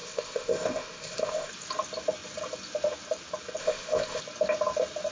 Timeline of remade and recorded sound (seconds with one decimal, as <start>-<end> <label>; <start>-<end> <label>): 0.0-1.5 remade; 1.5-3.6 recorded; 3.6-4.2 remade; 4.2-5.1 recorded